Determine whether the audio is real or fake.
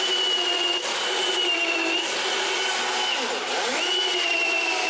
real